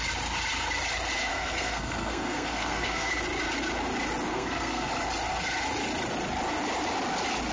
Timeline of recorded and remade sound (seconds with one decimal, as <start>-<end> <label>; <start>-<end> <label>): 0.0-1.3 recorded; 1.3-3.1 remade; 3.1-4.3 recorded; 4.3-4.9 remade; 4.9-7.5 recorded